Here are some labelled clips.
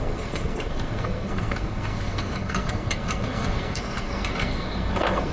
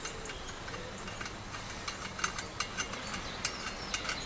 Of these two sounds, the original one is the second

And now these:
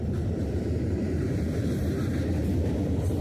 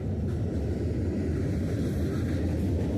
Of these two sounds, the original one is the second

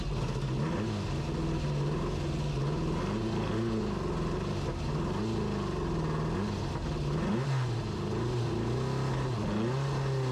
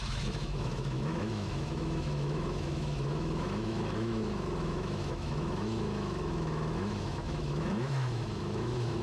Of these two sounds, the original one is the first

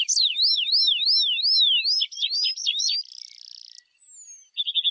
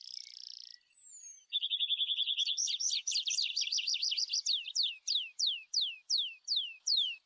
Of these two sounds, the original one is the first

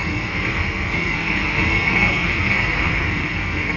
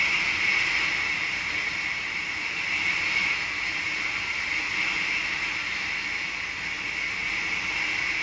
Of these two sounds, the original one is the second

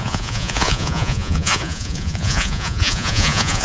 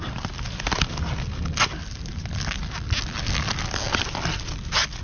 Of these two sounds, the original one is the second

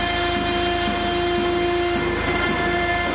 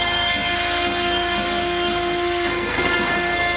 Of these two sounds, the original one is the first